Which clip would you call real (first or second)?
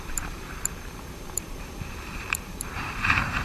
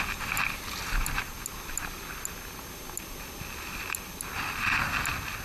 second